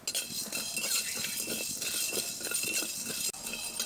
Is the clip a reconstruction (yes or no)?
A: no